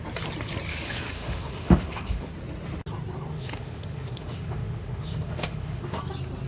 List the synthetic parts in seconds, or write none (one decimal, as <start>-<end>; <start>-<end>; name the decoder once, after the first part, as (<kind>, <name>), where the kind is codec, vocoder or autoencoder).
0.7-2.3 (autoencoder, DAC-VAE); 3.3-6.0